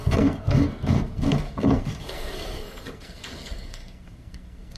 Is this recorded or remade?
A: remade